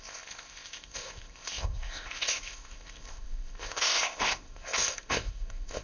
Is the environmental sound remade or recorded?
remade